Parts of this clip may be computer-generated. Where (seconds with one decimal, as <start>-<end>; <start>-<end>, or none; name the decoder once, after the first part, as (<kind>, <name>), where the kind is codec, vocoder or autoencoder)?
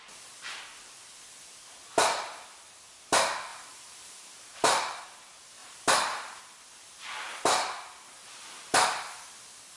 3.5-5.0 (vocoder, BigVGAN v2); 5.6-6.4